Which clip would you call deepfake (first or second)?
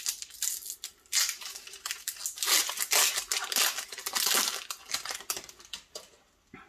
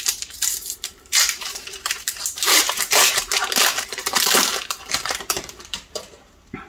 second